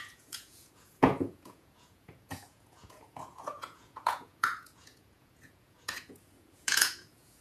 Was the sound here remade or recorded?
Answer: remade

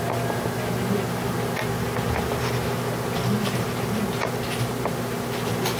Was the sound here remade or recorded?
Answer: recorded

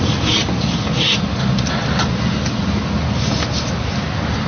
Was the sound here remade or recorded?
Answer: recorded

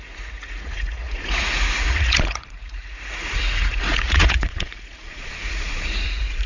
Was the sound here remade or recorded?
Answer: remade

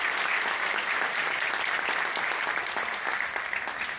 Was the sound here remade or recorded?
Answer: recorded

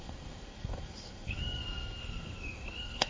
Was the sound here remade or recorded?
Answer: remade